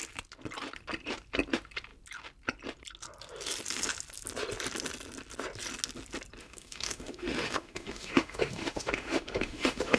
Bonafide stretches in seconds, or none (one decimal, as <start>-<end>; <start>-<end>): 0.0-6.4